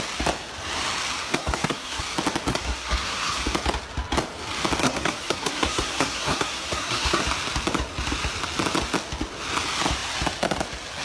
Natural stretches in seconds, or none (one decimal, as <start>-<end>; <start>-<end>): 0.0-1.2; 2.0-2.5; 3.4-4.8; 7.2-11.0